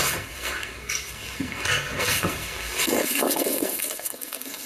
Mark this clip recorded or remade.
remade